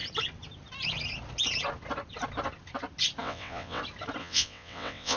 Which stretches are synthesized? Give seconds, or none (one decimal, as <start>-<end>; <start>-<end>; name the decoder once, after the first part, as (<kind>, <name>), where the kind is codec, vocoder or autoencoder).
3.2-3.8 (vocoder, WaveNeXt); 4.2-5.2